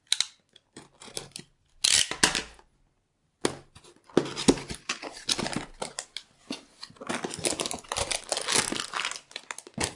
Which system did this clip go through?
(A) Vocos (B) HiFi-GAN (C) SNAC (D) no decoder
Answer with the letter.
D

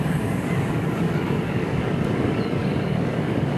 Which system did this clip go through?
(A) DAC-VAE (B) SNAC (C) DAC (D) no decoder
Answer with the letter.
C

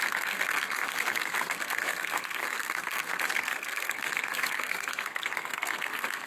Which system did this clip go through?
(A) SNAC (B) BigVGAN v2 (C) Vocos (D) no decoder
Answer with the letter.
A